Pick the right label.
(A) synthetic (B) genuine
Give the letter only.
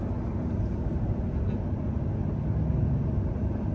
B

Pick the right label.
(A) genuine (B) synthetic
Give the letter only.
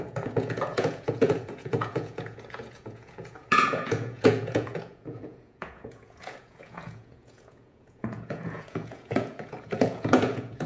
B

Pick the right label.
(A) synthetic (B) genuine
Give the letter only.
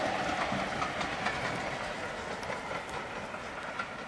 B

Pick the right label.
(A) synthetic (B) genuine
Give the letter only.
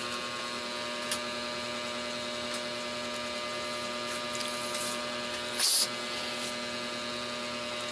B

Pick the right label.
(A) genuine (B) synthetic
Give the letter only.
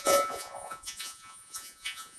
B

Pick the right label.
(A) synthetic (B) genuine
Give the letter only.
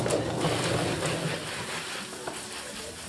B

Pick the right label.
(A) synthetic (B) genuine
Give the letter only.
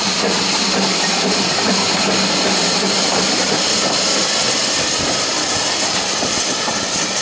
B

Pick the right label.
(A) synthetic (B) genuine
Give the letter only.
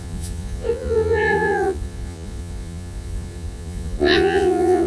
A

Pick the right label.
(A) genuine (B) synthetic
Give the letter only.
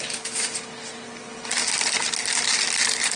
A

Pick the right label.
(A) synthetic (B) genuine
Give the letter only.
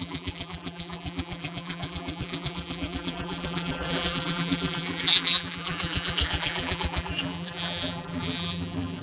A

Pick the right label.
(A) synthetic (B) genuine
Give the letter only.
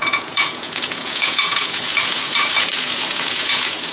A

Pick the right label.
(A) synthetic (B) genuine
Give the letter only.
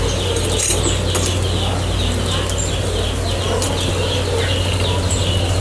B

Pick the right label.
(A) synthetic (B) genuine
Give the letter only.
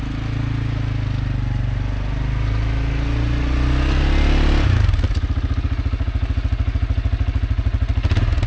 B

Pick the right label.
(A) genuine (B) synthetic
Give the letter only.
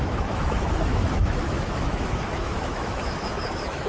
B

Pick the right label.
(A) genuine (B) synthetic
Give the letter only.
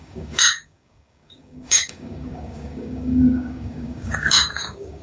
B